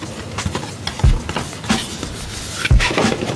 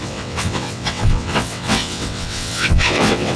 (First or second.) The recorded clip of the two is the first